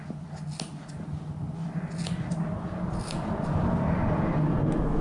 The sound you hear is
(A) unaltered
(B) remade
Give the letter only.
A